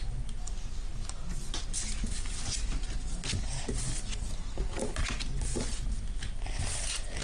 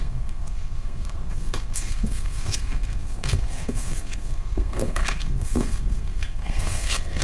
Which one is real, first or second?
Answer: first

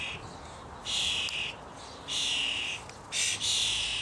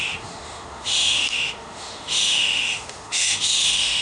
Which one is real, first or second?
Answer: first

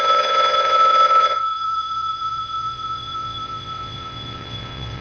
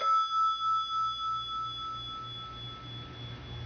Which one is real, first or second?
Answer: second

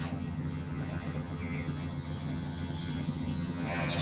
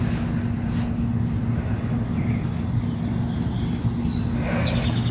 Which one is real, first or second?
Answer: second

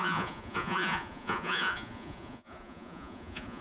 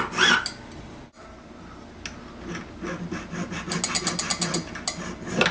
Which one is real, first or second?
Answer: second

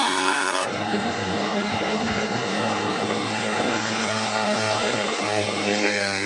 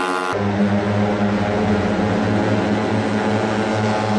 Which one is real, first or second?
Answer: second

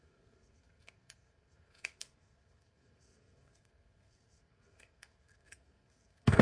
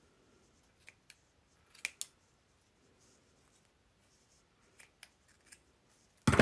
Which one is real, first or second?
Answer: second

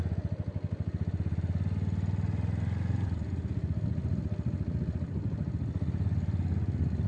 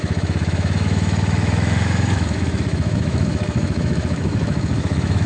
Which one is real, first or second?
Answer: first